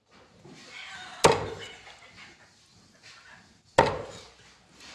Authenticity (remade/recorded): recorded